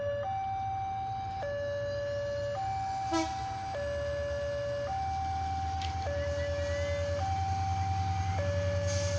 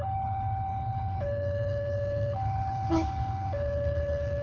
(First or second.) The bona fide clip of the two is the first